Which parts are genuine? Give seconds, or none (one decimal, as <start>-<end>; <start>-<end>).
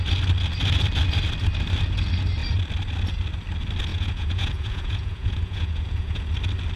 0.0-3.9; 6.2-6.8